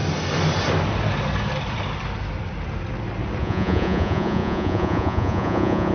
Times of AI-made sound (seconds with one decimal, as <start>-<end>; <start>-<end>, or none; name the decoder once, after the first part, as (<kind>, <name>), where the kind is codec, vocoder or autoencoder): 3.4-5.9 (vocoder, Vocos)